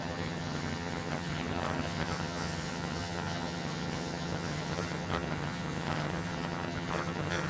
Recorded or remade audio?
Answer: remade